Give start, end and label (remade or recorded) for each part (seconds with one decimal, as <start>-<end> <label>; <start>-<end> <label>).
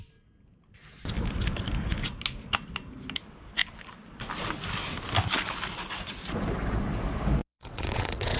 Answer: 0.0-7.4 recorded; 7.4-8.4 remade